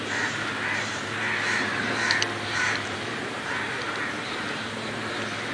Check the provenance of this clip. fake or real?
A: fake